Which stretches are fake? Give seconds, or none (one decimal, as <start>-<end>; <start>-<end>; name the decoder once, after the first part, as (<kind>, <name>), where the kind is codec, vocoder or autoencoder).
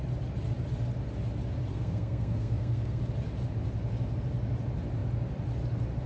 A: 1.7-3.0 (codec, SNAC)